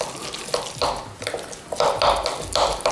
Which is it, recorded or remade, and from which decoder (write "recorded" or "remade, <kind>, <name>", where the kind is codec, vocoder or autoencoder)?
recorded